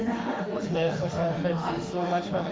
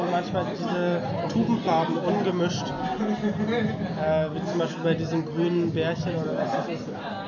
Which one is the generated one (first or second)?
first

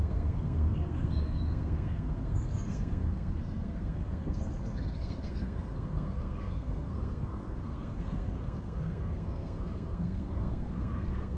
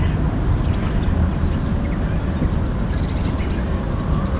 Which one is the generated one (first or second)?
first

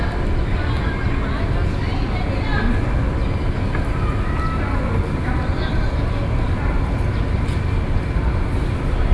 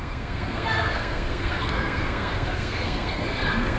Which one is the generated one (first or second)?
second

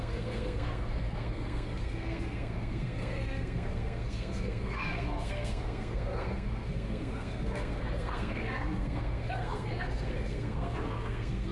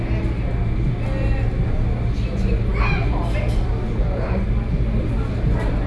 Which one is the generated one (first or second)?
first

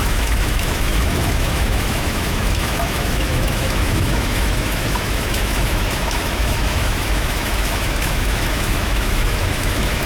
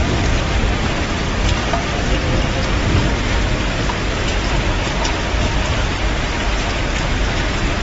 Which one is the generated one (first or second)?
first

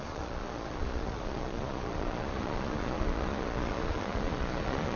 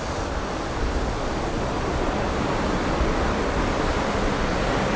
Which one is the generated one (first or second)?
first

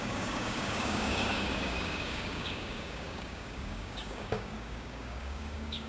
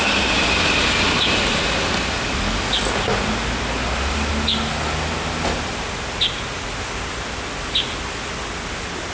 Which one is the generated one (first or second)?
first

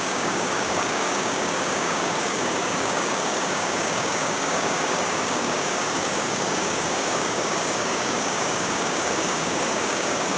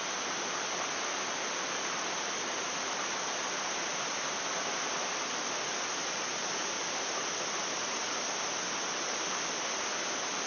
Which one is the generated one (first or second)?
first